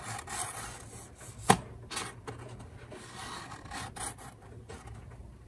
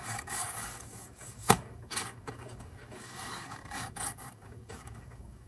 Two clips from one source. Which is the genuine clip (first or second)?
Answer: first